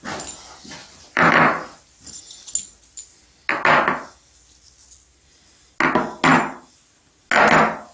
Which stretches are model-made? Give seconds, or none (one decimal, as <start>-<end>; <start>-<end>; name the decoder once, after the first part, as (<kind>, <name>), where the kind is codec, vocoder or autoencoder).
0.8-2.2 (vocoder, BigVGAN v2); 6.3-7.0

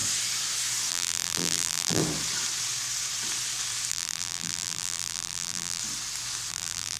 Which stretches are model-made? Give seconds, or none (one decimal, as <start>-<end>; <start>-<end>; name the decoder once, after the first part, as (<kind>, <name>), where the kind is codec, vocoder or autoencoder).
0.9-2.0 (vocoder, BigVGAN v2); 3.9-5.8; 6.5-7.0